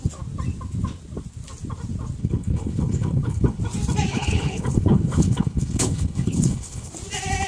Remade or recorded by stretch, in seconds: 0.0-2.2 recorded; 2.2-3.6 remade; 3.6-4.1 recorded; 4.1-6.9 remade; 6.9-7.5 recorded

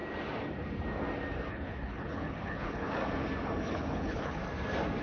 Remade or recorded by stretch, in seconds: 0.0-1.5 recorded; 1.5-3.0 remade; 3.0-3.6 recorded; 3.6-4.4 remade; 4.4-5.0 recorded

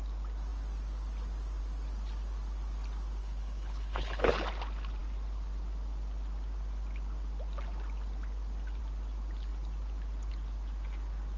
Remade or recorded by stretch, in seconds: 0.0-3.2 recorded; 3.2-4.3 remade; 4.3-11.4 recorded

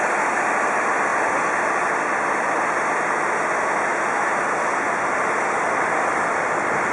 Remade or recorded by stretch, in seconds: 0.0-6.9 recorded

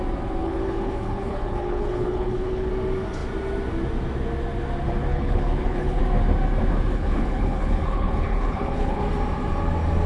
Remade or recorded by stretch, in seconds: 0.0-0.4 recorded; 0.4-2.7 remade; 2.7-5.1 recorded; 5.1-6.0 remade; 6.0-6.9 recorded; 6.9-9.0 remade; 9.0-10.1 recorded